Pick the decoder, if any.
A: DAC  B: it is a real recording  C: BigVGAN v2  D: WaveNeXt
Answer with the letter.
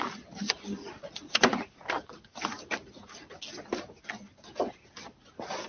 B